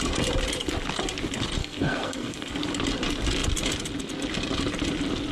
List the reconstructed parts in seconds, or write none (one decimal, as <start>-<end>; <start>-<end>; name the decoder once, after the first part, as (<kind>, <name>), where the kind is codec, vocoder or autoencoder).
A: 1.6-2.5 (codec, SNAC)